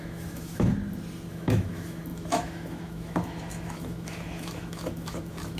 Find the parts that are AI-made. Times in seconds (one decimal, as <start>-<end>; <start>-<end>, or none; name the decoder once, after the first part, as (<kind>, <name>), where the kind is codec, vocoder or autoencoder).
0.0-0.7 (autoencoder, DAC-VAE); 1.3-5.6